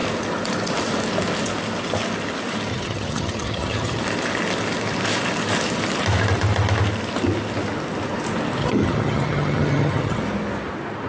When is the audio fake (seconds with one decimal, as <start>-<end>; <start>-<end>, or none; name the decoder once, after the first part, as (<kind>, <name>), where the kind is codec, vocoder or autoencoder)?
2.7-4.0 (vocoder, HiFi-GAN); 8.6-10.2